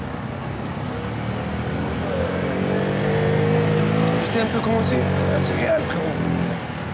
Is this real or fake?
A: real